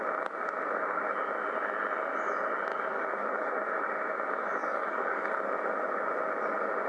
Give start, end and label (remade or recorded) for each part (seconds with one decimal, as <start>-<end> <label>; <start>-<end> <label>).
0.0-2.7 recorded; 2.7-3.5 remade; 3.5-4.6 recorded; 4.6-5.3 remade; 5.3-6.9 recorded